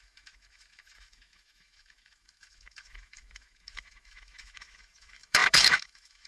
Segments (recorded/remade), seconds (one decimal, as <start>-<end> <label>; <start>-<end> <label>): 0.0-6.3 remade